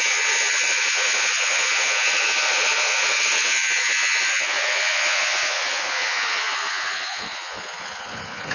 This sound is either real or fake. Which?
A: fake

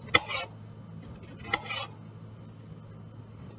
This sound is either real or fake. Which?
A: real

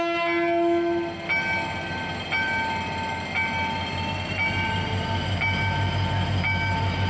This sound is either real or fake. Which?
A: real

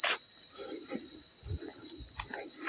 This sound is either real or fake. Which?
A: real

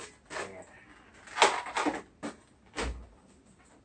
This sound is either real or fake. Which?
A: real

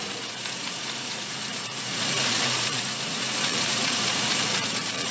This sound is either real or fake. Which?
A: fake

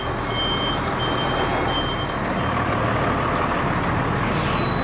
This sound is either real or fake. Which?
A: real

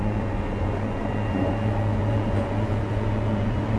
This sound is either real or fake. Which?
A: fake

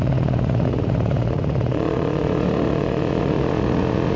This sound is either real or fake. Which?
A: fake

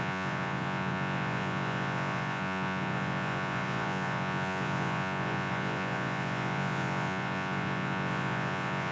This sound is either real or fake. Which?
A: fake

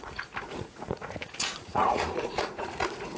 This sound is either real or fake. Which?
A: fake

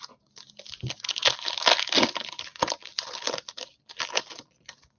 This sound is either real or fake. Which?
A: real